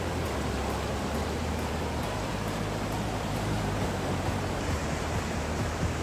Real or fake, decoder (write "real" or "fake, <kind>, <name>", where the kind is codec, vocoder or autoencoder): fake, vocoder, BigVGAN v2